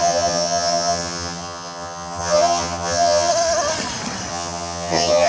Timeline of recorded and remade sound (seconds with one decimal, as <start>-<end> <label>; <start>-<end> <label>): 0.0-3.3 remade; 3.3-4.3 recorded; 4.3-5.3 remade

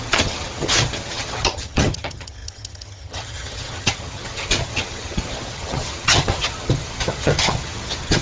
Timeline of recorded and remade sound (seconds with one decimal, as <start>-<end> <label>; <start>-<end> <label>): 0.0-8.2 remade

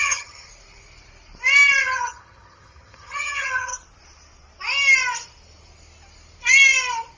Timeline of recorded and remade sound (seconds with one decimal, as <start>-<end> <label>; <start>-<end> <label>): 0.0-0.5 remade; 0.5-1.8 recorded; 1.8-3.7 remade; 3.7-7.2 recorded